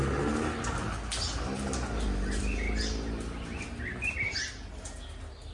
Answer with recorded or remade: recorded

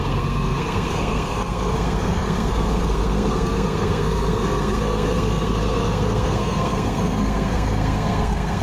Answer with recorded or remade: remade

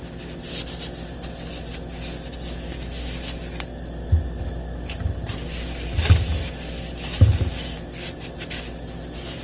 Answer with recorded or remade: recorded